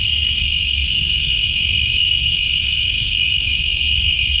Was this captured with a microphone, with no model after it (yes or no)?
no